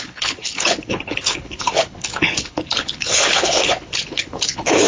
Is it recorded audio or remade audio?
remade